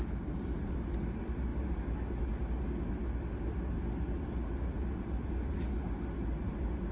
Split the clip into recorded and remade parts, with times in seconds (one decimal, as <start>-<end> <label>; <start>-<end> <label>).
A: 0.0-6.9 recorded